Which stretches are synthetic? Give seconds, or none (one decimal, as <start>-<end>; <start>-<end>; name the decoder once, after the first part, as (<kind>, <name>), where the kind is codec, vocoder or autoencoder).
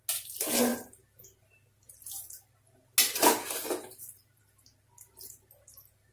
none